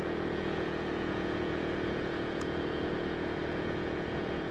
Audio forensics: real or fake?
fake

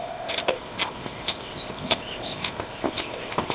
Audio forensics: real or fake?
fake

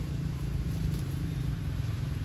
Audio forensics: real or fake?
fake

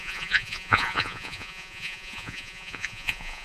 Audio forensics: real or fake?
fake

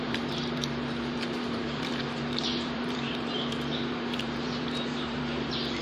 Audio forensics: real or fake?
fake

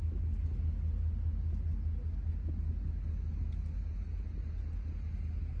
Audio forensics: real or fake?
real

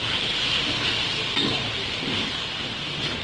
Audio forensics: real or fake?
real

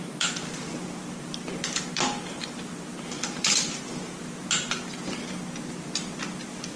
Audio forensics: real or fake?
real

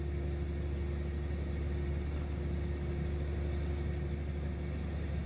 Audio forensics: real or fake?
real